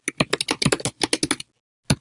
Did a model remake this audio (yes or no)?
no